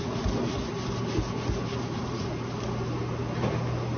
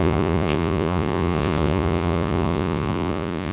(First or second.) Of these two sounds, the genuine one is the first